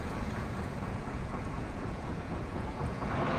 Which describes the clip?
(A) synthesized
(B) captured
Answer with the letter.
A